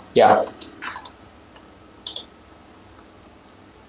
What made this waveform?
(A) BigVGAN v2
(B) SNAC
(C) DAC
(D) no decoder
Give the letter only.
D